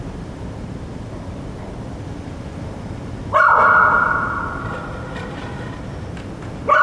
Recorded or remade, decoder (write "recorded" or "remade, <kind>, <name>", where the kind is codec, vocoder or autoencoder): recorded